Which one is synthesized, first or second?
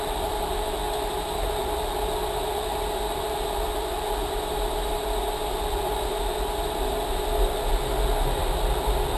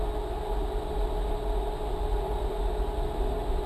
first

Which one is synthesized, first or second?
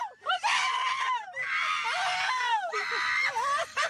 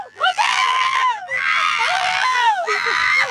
second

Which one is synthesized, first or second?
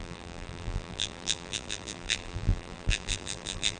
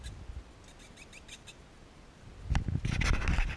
first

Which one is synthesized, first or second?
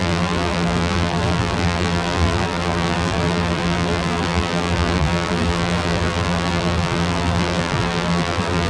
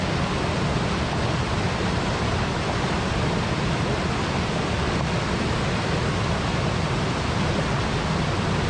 first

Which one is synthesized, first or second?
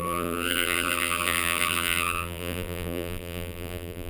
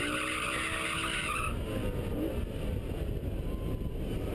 first